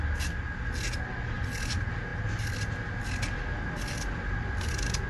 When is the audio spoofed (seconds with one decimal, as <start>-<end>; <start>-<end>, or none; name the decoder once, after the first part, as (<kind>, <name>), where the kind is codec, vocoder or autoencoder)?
none